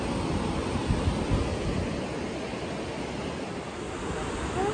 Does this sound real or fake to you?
real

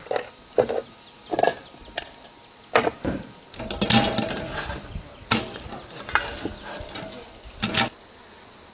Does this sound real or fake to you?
real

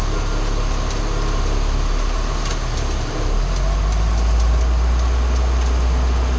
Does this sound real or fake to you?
real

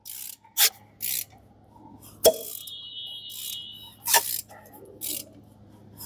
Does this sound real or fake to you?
real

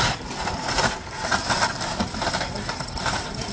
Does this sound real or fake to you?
real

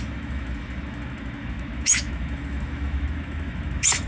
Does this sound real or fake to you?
fake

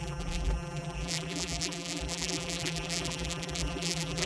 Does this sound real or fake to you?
fake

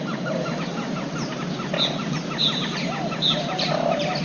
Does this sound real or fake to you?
real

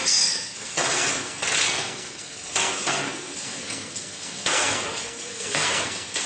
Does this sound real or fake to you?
fake